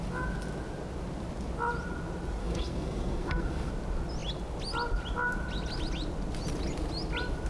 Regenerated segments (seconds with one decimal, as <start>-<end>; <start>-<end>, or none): 2.4-3.7